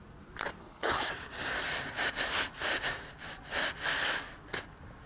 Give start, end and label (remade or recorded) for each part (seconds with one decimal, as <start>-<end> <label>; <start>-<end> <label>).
0.0-0.6 recorded; 0.6-1.1 remade; 1.1-5.1 recorded

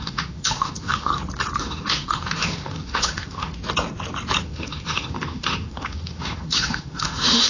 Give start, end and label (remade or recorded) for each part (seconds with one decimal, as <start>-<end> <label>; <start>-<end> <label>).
0.0-1.1 remade; 1.1-1.6 recorded; 1.6-3.6 remade; 3.6-4.4 recorded; 4.4-7.5 remade

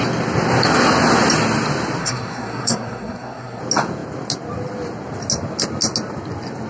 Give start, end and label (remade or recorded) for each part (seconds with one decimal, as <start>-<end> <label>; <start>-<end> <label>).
0.0-2.0 recorded; 2.0-3.6 remade; 3.6-6.7 recorded

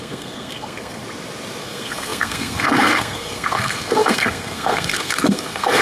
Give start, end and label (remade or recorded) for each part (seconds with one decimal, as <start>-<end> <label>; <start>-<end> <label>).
0.0-1.0 remade; 1.0-1.6 recorded; 1.6-5.8 remade

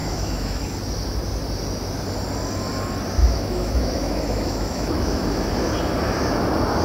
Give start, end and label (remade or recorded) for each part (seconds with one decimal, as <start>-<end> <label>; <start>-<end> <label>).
0.0-0.6 remade; 0.6-3.2 recorded; 3.2-5.5 remade; 5.5-6.8 recorded

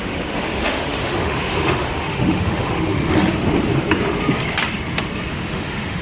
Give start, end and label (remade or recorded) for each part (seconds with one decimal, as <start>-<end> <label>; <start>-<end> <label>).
0.0-3.3 remade; 3.3-5.3 recorded; 5.3-6.0 remade

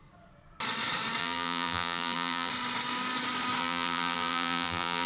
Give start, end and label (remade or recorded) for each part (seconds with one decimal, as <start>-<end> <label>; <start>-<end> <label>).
0.0-1.2 recorded; 1.2-2.5 remade; 2.5-3.6 recorded; 3.6-5.1 remade